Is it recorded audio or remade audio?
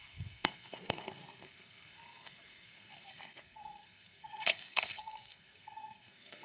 remade